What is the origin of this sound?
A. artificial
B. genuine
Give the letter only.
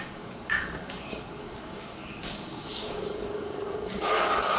A